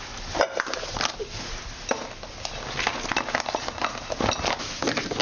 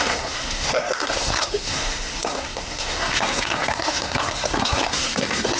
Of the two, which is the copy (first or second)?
second